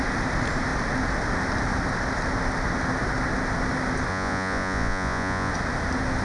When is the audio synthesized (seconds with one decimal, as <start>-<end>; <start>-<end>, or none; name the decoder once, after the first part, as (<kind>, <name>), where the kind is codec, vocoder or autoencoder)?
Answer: 4.1-5.5 (vocoder, Vocos)